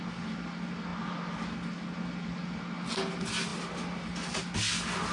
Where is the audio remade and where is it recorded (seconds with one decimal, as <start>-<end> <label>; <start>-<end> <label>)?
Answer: 0.0-5.1 recorded

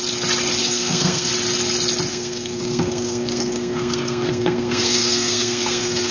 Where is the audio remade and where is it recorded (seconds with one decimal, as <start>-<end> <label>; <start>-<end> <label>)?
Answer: 0.0-0.6 recorded; 0.6-1.3 remade; 1.3-2.1 recorded; 2.1-6.1 remade